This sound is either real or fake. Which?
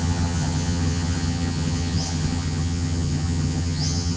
fake